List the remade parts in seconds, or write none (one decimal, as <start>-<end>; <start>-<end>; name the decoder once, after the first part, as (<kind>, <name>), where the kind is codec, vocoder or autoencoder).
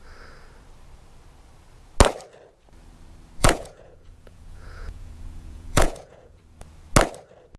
3.4-6.4 (vocoder, Vocos)